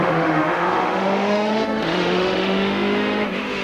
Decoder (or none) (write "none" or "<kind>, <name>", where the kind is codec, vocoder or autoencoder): autoencoder, DAC-VAE